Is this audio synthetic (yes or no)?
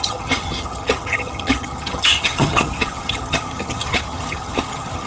yes